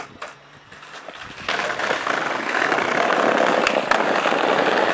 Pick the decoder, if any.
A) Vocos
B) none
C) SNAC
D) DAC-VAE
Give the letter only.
B